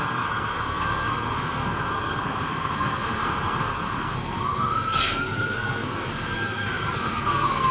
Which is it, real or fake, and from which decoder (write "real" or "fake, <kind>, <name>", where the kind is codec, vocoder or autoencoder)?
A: fake, codec, SNAC